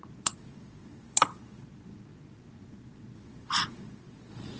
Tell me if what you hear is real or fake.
fake